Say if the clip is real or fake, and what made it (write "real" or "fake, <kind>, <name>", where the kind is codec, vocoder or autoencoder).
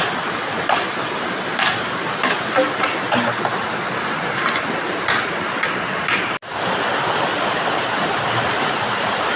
fake, vocoder, BigVGAN v2